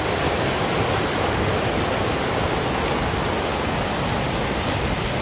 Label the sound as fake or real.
real